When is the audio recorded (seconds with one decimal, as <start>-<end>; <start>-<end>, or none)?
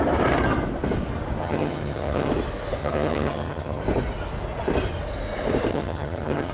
0.0-1.4; 2.3-2.8; 3.8-5.7